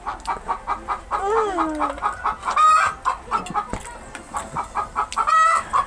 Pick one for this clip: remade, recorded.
recorded